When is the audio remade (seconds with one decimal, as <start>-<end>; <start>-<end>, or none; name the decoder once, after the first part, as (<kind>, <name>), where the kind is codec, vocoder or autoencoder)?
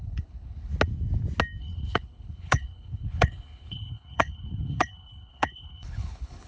0.0-0.7 (codec, HILCodec); 1.6-6.5